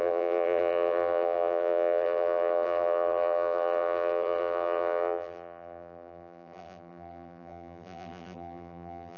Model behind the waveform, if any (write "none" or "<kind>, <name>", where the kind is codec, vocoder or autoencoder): vocoder, BigVGAN v2